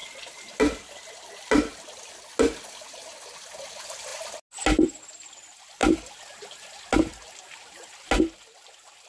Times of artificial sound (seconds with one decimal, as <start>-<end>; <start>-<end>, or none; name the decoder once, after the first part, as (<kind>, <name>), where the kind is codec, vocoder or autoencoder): none